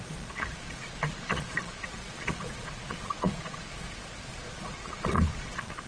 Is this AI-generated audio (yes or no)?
yes